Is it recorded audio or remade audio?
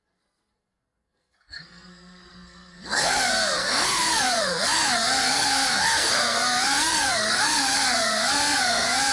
remade